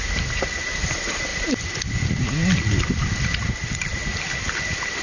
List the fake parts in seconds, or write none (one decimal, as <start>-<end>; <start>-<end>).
none

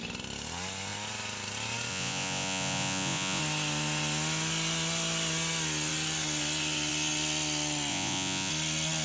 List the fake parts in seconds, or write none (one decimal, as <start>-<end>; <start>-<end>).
1.9-3.4; 7.9-8.5

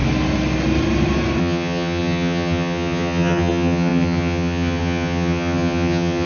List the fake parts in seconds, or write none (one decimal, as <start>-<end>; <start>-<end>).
1.4-6.3

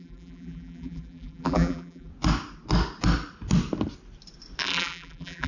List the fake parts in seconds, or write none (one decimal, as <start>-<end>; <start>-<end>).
0.0-2.1; 4.6-5.5

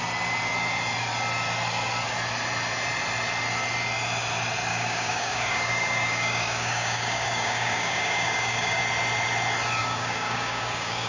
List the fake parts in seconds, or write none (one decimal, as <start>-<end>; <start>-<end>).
4.7-8.8; 9.8-11.1

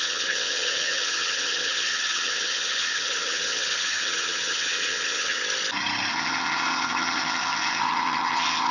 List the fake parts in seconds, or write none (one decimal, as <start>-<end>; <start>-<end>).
0.0-5.4; 6.1-8.7